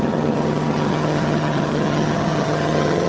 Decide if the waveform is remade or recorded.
remade